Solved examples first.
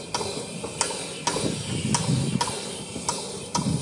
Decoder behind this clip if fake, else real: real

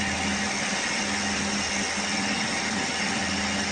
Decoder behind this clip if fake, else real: real